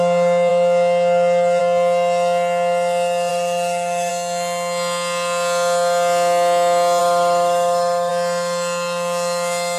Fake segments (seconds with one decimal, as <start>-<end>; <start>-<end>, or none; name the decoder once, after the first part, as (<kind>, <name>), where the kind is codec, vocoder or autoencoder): 3.3-4.1 (autoencoder, DAC-VAE); 7.0-8.1